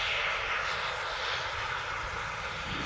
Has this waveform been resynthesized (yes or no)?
no